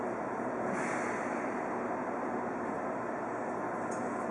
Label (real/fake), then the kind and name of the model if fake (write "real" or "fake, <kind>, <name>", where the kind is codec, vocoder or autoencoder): real